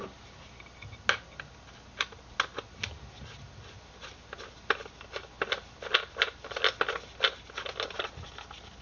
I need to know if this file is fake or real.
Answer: real